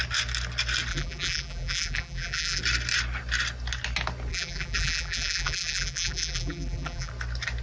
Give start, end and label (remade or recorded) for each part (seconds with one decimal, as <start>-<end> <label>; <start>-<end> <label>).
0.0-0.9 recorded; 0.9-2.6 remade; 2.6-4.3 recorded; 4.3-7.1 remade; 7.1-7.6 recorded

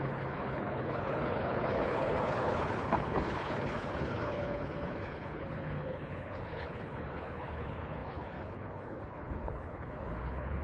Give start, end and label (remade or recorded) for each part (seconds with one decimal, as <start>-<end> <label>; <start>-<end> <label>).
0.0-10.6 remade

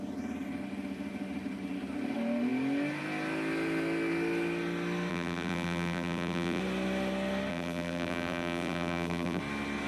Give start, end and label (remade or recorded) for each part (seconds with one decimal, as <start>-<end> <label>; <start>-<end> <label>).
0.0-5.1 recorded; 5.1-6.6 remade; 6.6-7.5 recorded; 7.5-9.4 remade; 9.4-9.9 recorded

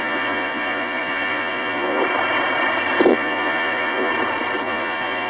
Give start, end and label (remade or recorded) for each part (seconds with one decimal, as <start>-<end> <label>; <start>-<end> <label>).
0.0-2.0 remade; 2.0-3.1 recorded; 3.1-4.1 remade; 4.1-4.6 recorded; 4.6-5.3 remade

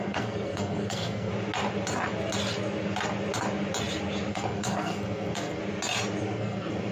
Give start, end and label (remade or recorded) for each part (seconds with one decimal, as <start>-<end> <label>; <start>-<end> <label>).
0.0-1.3 remade; 1.3-4.3 recorded; 4.3-5.6 remade; 5.6-6.2 recorded; 6.2-6.9 remade

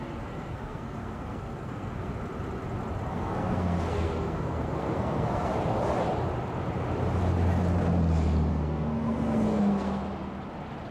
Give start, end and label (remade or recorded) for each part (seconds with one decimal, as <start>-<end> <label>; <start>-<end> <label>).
0.0-2.1 remade; 2.1-3.1 recorded; 3.1-5.5 remade; 5.5-8.5 recorded; 8.5-10.0 remade; 10.0-10.9 recorded